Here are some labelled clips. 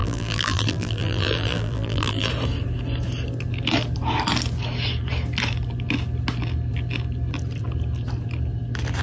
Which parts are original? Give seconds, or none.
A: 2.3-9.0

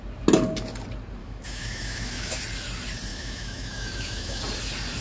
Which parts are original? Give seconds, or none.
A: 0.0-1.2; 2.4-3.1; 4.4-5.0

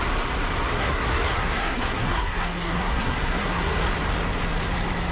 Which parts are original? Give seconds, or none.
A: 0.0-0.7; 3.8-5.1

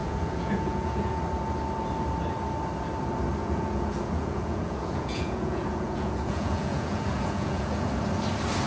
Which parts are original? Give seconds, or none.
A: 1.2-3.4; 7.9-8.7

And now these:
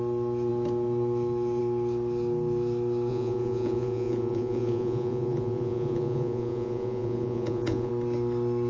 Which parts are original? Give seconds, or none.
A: 0.0-3.1; 7.9-8.7

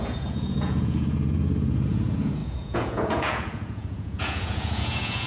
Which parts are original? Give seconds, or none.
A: none

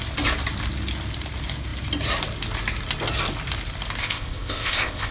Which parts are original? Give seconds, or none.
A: 0.0-4.0